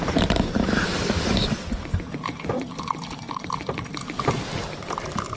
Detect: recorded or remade recorded